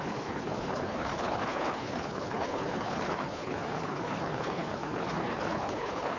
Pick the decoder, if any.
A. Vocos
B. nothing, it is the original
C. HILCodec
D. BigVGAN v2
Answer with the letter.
C